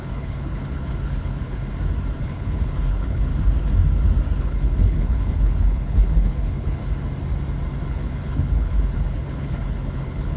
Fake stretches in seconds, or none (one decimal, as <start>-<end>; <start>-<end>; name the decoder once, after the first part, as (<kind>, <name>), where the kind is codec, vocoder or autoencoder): 0.0-1.6 (codec, HILCodec); 2.2-3.3; 4.4-6.8; 7.9-10.4

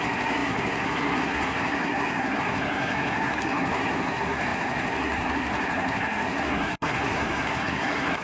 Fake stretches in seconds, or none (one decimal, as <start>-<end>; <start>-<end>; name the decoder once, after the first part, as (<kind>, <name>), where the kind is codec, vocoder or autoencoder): 0.0-8.2 (codec, SNAC)

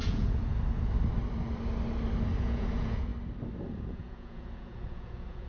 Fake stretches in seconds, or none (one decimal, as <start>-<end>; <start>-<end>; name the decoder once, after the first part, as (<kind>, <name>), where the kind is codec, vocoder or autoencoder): 0.0-0.5 (vocoder, Vocos); 2.4-3.1; 3.8-5.5